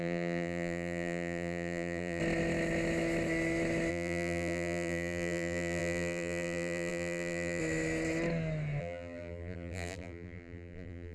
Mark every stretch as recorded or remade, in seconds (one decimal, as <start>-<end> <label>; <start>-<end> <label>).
0.0-2.2 remade; 2.2-3.9 recorded; 3.9-7.6 remade; 7.6-8.8 recorded; 8.8-11.1 remade